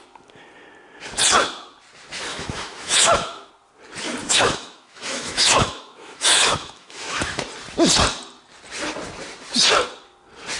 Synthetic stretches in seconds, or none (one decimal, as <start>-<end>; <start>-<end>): 2.3-3.5; 4.2-7.4